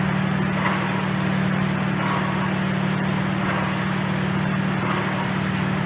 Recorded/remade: recorded